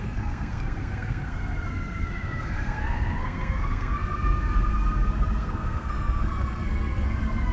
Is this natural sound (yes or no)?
no